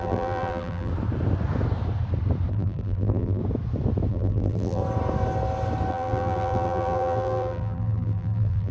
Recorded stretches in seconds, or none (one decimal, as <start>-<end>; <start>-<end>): 0.9-2.5; 3.4-4.1; 4.8-5.9